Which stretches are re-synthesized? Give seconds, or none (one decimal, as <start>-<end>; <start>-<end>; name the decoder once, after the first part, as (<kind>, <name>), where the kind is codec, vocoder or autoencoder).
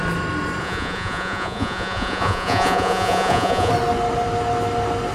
0.6-3.7 (vocoder, Vocos)